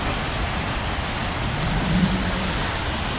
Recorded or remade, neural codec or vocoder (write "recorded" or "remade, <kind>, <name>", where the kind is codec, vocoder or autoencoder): remade, vocoder, BigVGAN v2